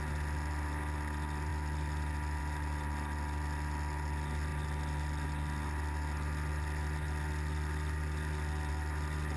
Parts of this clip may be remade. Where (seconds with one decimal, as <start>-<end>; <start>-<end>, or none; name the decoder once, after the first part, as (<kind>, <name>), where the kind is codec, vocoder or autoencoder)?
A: none